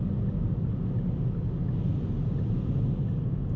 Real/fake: real